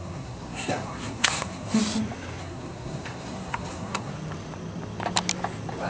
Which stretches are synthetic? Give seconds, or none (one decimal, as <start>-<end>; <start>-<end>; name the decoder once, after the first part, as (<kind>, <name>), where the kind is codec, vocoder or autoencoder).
0.0-1.8 (codec, SNAC); 2.4-4.1